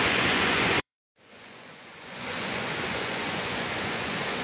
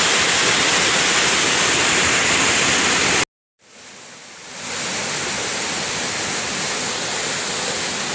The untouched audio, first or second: second